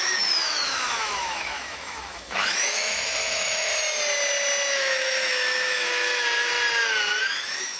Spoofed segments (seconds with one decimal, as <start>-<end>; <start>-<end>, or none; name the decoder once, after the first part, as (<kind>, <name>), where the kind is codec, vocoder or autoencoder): 0.0-3.7 (autoencoder, DAC-VAE); 4.7-6.5; 7.2-7.8